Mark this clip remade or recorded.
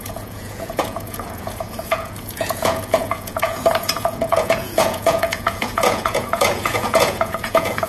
remade